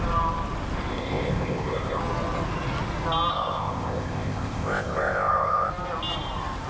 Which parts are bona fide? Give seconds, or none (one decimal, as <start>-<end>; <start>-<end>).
0.0-0.9; 2.0-3.3; 5.7-6.7